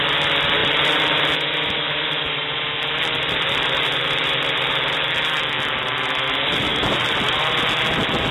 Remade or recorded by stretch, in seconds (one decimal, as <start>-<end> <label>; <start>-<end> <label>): 0.0-0.6 recorded; 0.6-5.4 remade; 5.4-6.7 recorded; 6.7-7.5 remade; 7.5-8.3 recorded